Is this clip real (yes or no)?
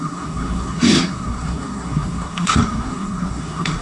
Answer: no